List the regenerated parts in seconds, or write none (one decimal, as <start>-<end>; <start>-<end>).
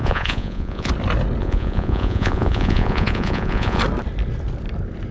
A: 0.0-0.9; 1.4-3.8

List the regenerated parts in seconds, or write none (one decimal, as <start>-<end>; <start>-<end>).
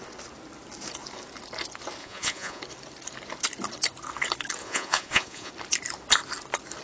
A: 2.0-2.6; 4.6-5.5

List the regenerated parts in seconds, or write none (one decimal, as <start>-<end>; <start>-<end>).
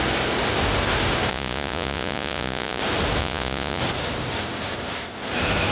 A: 1.3-2.8; 3.2-3.8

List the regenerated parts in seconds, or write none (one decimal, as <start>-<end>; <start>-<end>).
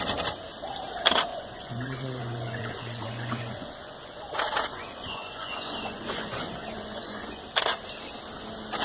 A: 1.3-4.3; 4.7-7.4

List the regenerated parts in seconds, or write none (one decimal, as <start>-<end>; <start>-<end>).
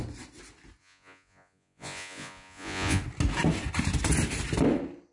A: 0.8-3.0